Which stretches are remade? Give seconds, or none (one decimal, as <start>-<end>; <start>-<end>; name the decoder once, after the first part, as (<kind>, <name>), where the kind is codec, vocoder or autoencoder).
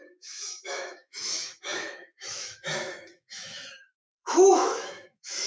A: 0.0-5.5 (autoencoder, DAC-VAE)